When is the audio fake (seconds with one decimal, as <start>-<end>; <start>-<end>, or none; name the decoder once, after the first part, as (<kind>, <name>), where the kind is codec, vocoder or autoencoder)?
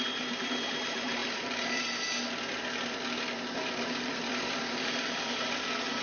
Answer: 0.0-1.2 (vocoder, BigVGAN v2); 3.6-6.0